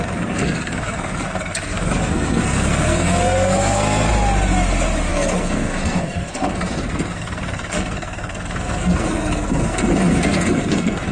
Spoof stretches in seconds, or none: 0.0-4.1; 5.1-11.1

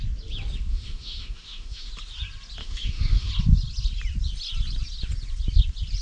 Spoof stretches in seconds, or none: 0.7-1.9; 2.6-3.3

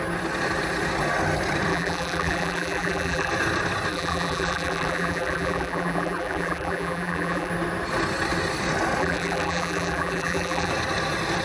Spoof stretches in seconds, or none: 1.7-3.3; 3.9-7.5; 9.0-10.7

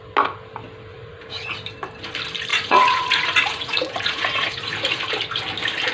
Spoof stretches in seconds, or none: 0.9-1.5; 2.5-4.9

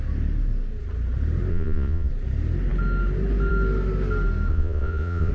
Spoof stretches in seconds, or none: 1.5-2.1; 4.5-5.3

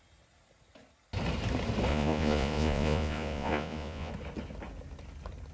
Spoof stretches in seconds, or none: 1.9-4.1

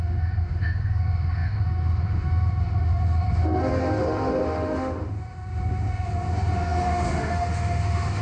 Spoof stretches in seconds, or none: 0.0-8.2

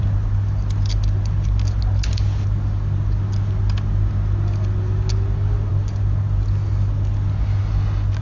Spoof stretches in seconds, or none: none